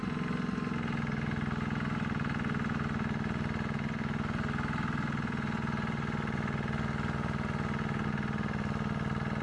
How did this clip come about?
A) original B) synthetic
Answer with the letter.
A